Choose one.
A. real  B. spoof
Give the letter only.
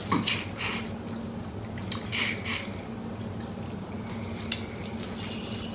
A